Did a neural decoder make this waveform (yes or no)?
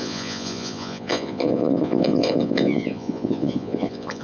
yes